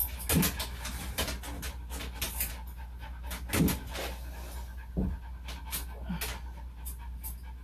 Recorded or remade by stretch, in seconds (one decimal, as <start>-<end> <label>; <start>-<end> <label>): 0.0-7.6 recorded